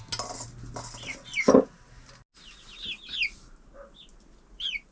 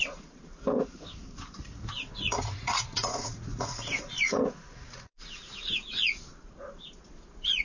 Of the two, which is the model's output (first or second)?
second